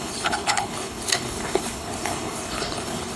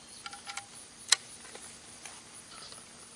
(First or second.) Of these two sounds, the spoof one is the first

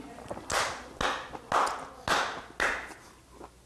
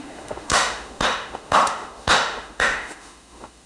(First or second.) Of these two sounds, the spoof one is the second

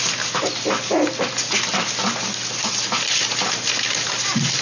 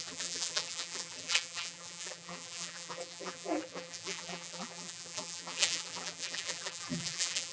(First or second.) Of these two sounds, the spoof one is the second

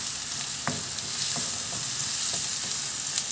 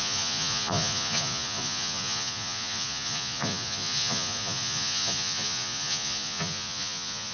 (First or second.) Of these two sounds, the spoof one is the second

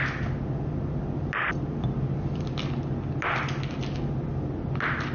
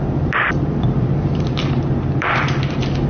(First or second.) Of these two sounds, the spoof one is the second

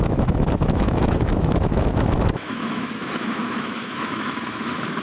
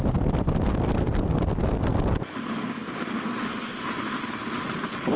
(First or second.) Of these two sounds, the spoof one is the first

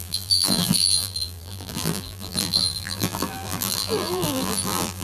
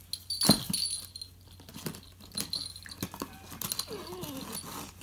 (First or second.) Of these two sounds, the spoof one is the first